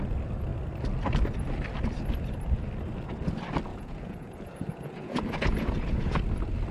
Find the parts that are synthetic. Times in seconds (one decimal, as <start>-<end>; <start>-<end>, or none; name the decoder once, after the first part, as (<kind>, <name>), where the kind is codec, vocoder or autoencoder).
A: 3.7-6.2 (vocoder, Vocos)